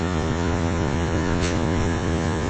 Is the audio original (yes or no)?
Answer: no